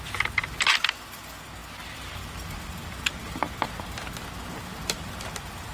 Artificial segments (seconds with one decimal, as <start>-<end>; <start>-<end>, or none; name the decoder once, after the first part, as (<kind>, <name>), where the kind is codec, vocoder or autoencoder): none